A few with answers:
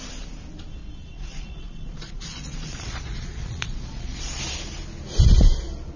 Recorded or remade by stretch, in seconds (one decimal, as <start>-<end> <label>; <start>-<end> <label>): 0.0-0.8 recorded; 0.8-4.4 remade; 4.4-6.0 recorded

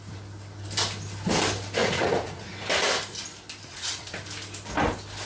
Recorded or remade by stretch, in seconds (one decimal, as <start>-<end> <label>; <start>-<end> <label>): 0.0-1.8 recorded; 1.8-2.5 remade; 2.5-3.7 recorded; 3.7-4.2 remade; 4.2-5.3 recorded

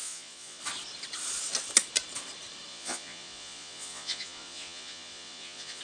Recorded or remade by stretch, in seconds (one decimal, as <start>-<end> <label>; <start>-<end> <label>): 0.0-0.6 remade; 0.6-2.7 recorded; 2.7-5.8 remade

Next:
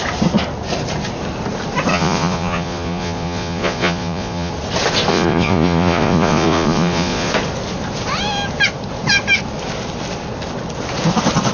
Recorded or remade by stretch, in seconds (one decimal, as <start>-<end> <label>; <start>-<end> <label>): 0.0-1.9 recorded; 1.9-4.5 remade; 4.5-5.1 recorded; 5.1-7.3 remade; 7.3-11.5 recorded

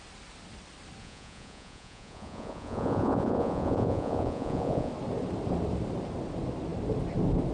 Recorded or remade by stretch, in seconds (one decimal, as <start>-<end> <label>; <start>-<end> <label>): 0.0-1.0 recorded; 1.0-4.9 remade; 4.9-7.5 recorded